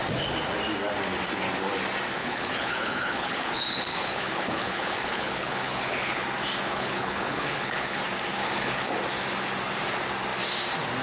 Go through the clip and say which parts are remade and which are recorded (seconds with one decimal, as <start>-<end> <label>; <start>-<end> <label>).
0.0-2.2 recorded; 2.2-6.2 remade; 6.2-6.7 recorded; 6.7-8.0 remade; 8.0-8.4 recorded; 8.4-8.9 remade; 8.9-11.0 recorded